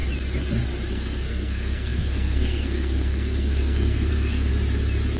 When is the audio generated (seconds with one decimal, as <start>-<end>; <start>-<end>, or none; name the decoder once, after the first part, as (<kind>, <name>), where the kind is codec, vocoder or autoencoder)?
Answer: 0.9-4.5 (codec, SNAC)

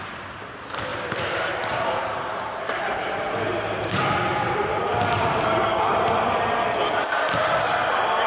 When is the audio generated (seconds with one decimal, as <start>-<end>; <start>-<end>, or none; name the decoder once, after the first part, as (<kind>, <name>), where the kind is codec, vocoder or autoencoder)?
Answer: 0.9-5.9 (vocoder, BigVGAN v2)